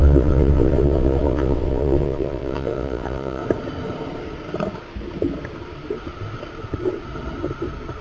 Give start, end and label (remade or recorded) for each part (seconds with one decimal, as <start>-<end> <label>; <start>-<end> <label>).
0.0-3.4 remade; 3.4-8.0 recorded